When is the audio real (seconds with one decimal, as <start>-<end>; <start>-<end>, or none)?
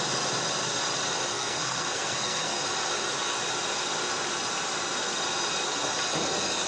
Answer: 0.0-1.3; 2.6-6.7